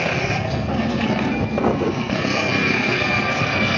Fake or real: fake